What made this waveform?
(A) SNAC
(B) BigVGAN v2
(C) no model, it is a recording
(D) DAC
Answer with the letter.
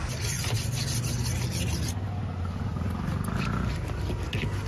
C